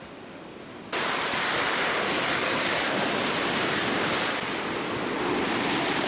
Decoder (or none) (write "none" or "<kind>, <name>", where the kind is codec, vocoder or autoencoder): none